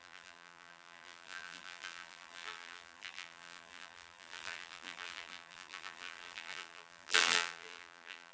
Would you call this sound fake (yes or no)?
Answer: yes